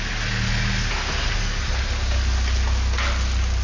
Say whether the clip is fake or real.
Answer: real